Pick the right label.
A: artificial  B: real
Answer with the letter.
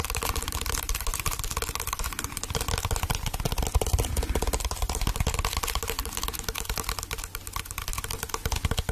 B